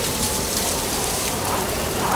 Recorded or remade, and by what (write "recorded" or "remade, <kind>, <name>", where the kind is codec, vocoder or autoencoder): remade, vocoder, BigVGAN v2